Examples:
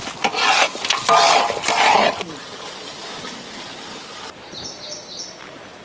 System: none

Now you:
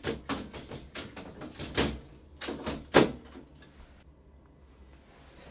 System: none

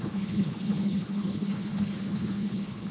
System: codec, HILCodec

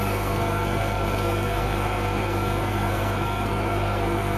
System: codec, SNAC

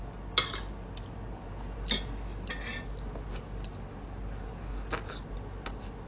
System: none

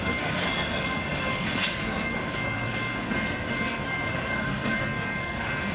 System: codec, SNAC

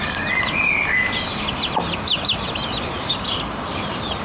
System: none